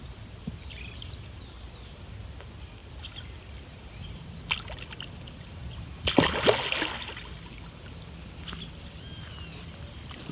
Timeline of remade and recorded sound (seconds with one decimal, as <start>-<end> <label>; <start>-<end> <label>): 0.0-10.3 recorded